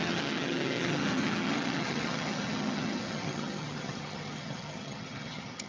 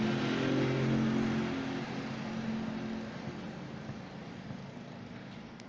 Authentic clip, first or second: second